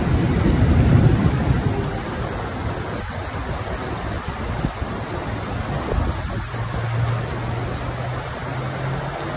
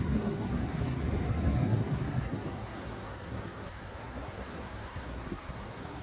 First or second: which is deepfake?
second